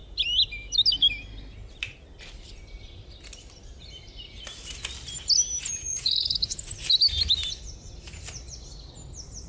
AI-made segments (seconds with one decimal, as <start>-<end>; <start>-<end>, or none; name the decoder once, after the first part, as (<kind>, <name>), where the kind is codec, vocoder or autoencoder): 5.6-6.6 (vocoder, Vocos)